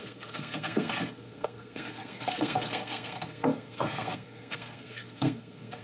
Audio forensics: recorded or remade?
remade